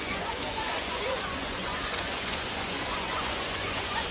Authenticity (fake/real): fake